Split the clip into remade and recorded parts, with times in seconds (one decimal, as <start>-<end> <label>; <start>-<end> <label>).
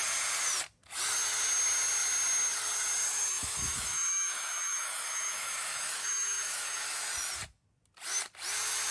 0.0-3.3 recorded; 3.3-7.3 remade; 7.3-8.9 recorded